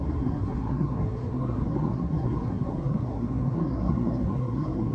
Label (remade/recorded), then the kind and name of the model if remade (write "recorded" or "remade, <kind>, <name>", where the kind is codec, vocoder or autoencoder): remade, codec, SNAC